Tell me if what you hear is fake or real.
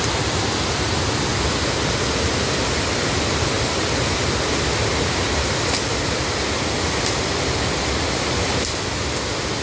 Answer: real